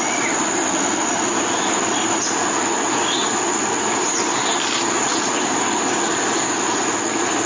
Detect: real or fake real